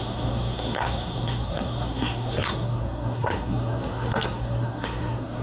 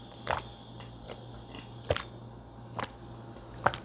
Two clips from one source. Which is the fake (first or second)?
first